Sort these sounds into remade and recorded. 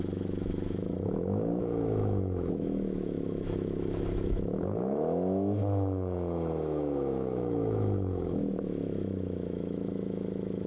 remade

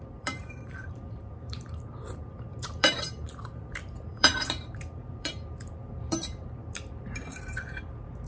remade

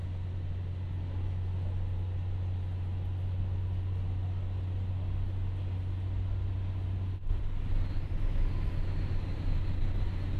recorded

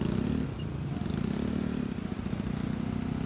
recorded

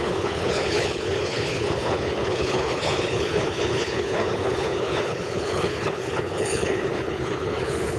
remade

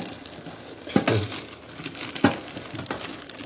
recorded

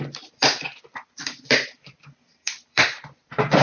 remade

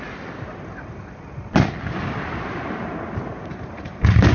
recorded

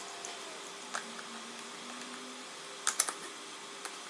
recorded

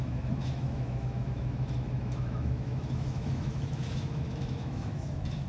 remade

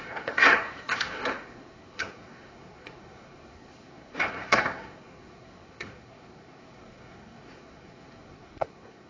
remade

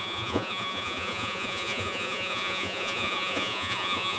remade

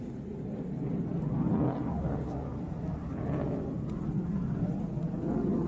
recorded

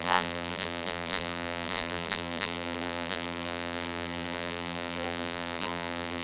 remade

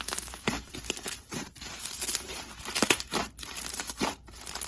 remade